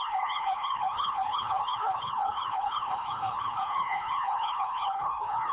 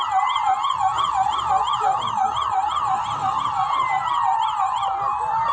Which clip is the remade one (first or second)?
first